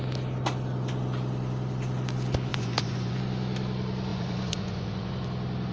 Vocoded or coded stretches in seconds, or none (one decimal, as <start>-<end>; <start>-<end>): 2.5-3.2; 4.1-5.1